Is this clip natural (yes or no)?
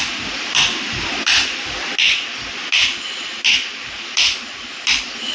yes